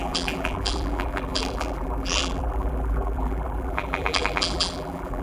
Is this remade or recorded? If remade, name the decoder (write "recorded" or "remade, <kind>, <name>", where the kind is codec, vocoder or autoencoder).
remade, vocoder, BigVGAN v2